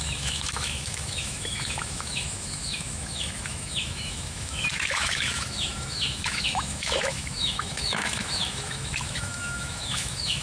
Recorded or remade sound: remade